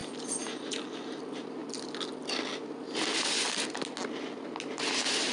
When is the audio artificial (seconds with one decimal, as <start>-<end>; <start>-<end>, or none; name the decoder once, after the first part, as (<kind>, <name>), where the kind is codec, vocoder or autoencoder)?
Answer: none